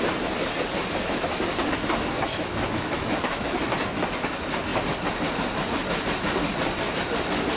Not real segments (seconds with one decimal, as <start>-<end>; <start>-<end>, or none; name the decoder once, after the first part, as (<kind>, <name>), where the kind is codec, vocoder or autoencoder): 2.3-3.6 (autoencoder, DAC-VAE)